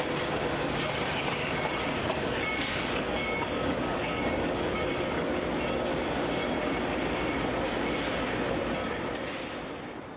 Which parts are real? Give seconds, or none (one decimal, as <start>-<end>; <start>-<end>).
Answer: 0.0-2.0; 5.4-10.2